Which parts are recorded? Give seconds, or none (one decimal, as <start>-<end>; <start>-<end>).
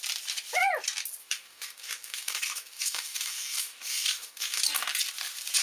0.0-1.2; 4.6-5.6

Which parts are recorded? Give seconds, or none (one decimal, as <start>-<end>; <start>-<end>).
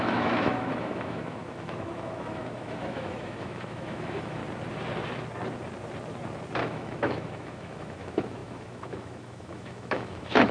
4.4-6.6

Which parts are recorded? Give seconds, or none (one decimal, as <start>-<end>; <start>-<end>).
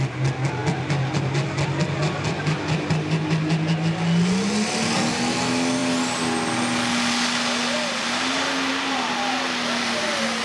0.0-10.4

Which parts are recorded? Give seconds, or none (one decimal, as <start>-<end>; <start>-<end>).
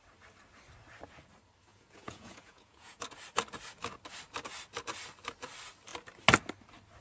0.0-1.7; 3.0-7.0